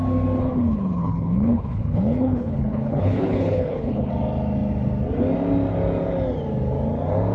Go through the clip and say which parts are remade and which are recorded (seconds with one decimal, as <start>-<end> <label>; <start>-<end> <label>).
0.0-0.4 recorded; 0.4-4.1 remade; 4.1-7.3 recorded